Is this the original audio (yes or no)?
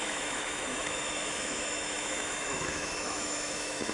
no